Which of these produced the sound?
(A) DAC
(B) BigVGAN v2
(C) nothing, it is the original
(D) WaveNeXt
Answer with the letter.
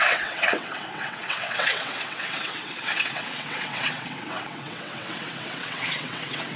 D